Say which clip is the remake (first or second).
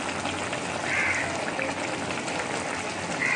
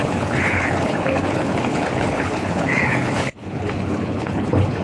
second